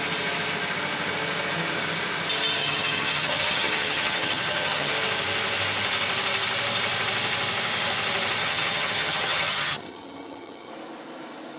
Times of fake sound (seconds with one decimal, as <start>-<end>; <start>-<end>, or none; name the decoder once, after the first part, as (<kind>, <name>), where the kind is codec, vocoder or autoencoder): 2.6-4.9 (vocoder, HiFi-GAN); 8.4-10.7